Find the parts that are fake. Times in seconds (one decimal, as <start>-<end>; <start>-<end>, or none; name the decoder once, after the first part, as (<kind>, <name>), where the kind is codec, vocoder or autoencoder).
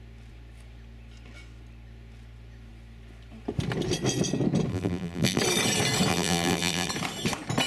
4.7-5.4 (vocoder, BigVGAN v2); 6.1-6.9